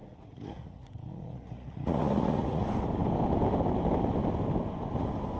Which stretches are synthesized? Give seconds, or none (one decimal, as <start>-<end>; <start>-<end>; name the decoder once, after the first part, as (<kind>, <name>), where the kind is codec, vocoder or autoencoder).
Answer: 0.0-2.6 (vocoder, Vocos)